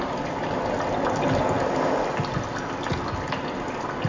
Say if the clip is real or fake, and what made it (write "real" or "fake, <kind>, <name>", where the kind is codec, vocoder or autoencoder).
real